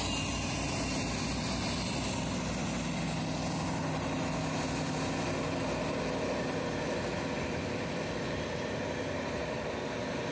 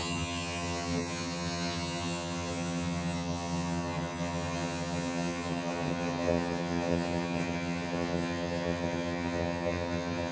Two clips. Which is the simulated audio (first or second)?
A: second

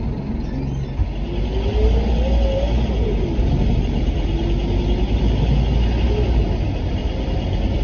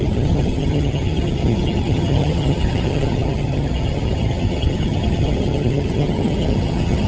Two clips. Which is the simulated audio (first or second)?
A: second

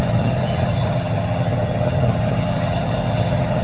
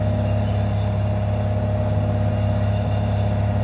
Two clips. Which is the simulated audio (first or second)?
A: first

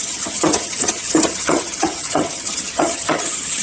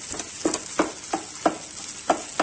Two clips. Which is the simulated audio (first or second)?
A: first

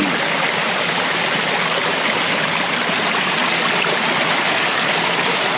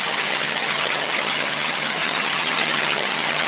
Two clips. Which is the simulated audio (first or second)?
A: second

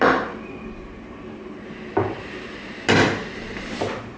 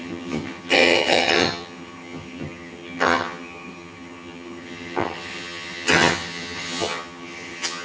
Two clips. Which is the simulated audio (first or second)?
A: second